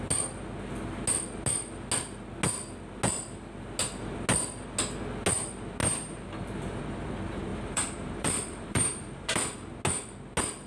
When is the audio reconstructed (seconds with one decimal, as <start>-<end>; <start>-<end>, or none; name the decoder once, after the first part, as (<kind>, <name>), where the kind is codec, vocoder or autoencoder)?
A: 5.8-6.8 (vocoder, BigVGAN v2); 7.5-9.3